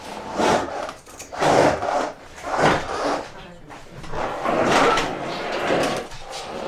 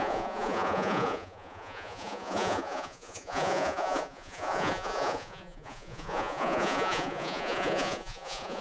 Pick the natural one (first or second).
first